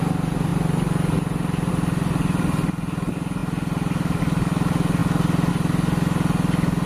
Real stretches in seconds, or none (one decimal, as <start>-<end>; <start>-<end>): 0.0-6.9